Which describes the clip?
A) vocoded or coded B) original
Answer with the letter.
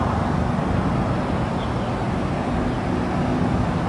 B